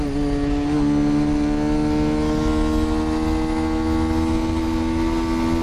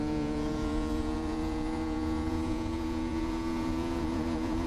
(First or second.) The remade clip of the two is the second